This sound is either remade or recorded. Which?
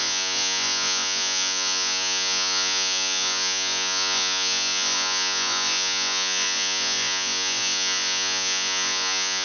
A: remade